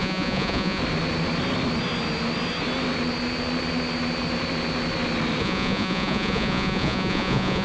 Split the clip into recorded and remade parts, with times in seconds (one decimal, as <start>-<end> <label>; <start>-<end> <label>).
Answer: 0.0-0.8 remade; 0.8-5.4 recorded; 5.4-7.6 remade